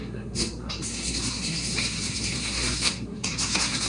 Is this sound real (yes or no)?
no